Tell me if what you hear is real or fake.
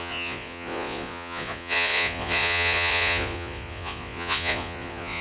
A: fake